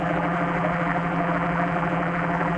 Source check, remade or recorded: remade